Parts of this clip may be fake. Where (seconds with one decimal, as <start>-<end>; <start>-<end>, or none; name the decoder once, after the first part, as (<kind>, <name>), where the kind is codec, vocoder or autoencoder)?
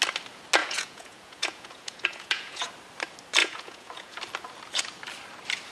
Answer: 0.6-2.7 (vocoder, Vocos); 3.4-4.2